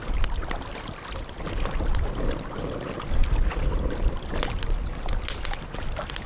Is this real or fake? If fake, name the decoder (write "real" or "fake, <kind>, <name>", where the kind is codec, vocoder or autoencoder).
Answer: real